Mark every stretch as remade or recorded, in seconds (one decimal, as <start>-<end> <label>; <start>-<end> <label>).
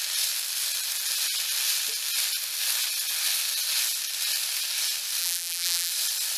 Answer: 0.0-5.2 recorded; 5.2-5.9 remade; 5.9-6.4 recorded